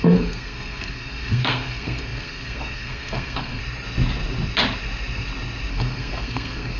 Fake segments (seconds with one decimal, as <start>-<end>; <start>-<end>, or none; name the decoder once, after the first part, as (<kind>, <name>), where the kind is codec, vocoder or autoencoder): 0.0-3.6 (codec, SNAC); 5.7-6.8